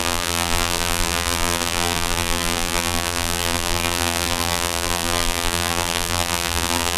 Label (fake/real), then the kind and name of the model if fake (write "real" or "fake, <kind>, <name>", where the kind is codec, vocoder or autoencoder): fake, vocoder, BigVGAN v2